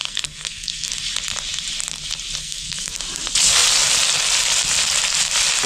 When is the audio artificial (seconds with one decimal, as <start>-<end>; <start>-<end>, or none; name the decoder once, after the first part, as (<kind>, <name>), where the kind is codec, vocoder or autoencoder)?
0.0-0.9 (codec, SNAC); 2.4-3.0